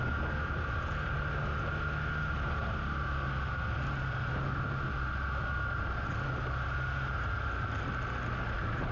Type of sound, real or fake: real